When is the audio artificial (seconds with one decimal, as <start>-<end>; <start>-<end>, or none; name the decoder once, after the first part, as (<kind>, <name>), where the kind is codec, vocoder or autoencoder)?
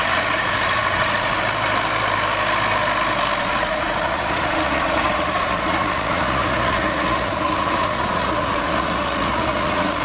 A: 0.0-1.4 (vocoder, Vocos); 3.4-10.0